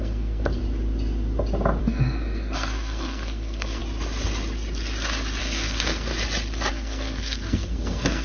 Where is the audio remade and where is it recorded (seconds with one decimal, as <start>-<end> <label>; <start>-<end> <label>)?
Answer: 0.0-0.6 remade; 0.6-1.8 recorded; 1.8-3.8 remade; 3.8-5.4 recorded; 5.4-6.1 remade; 6.1-6.7 recorded; 6.7-8.2 remade